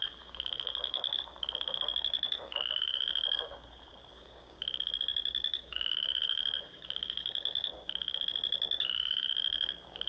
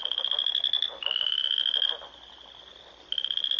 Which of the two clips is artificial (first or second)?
first